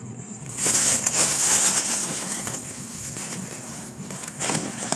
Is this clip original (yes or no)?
no